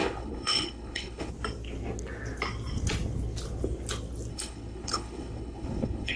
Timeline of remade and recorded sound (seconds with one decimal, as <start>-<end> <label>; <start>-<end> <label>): 0.0-1.3 remade; 1.3-4.3 recorded; 4.3-6.2 remade